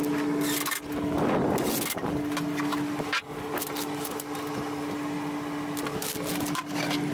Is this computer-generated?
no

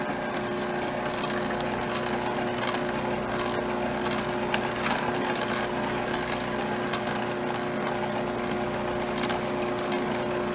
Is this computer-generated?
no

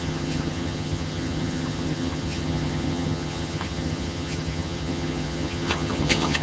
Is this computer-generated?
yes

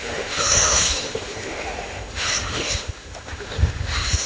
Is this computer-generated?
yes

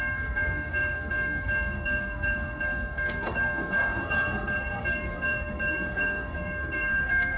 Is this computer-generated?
yes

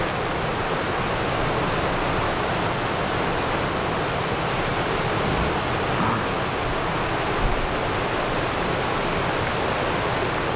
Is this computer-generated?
no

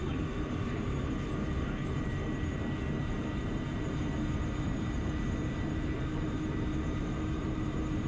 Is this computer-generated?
yes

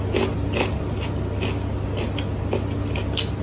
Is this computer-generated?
no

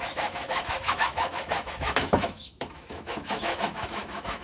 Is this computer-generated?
yes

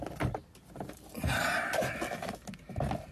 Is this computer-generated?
no